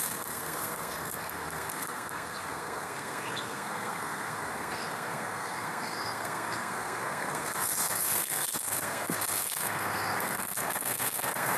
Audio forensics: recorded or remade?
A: remade